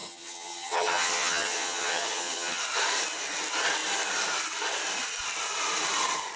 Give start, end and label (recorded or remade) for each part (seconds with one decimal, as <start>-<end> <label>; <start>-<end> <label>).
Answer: 0.0-2.6 remade; 2.6-6.4 recorded